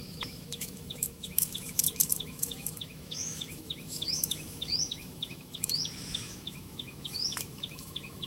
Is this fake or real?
fake